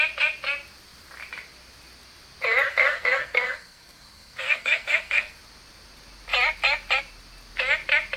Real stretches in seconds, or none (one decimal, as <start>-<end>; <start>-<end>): 0.0-2.7; 5.4-8.2

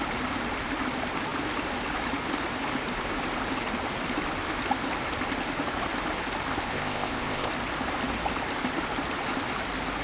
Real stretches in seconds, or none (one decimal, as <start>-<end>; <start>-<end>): 0.0-6.5; 7.5-10.0